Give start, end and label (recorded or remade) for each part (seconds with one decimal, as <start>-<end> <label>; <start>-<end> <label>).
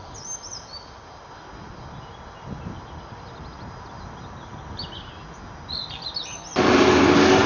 0.0-0.5 recorded; 0.5-1.8 remade; 1.8-7.5 recorded